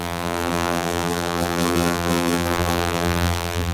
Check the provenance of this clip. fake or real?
fake